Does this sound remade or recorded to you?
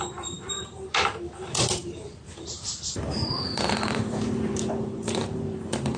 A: remade